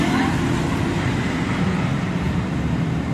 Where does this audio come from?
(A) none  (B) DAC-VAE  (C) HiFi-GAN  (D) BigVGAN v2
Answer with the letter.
D